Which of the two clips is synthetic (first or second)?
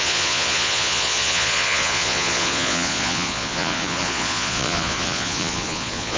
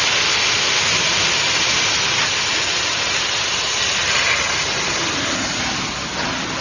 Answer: first